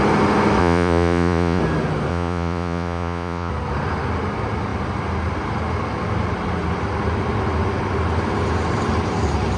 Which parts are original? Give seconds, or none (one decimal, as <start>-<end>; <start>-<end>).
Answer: 0.0-0.6; 1.6-2.1; 3.5-9.6